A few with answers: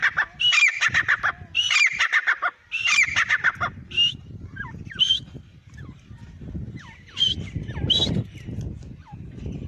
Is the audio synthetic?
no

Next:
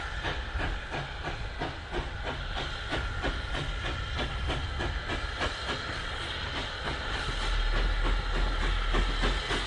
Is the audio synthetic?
no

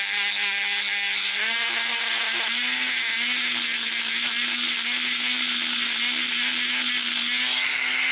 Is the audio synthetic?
no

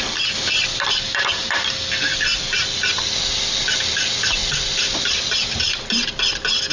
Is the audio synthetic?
no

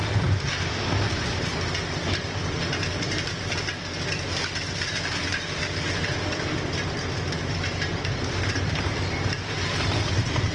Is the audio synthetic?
yes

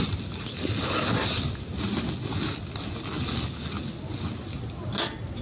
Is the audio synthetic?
no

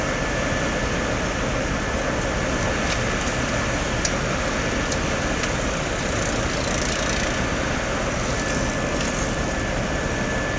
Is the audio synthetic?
no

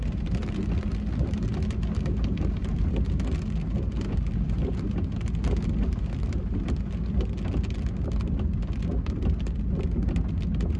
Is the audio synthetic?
no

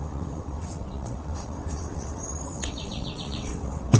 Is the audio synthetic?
yes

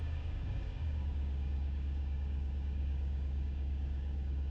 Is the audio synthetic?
yes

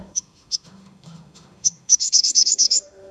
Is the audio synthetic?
yes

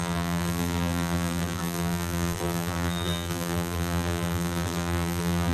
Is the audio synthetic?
yes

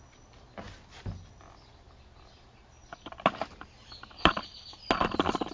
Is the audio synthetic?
no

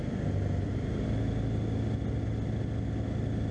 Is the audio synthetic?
no